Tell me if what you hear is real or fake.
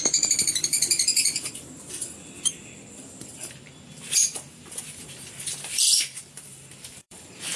fake